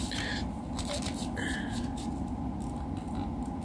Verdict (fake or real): real